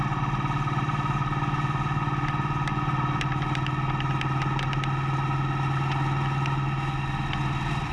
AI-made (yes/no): no